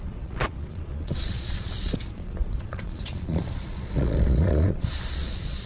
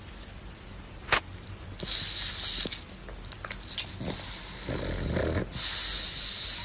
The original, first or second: second